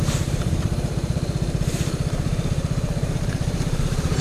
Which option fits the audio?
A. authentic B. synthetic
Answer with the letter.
B